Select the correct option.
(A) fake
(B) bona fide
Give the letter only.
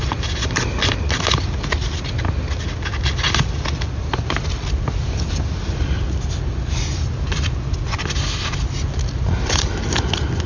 B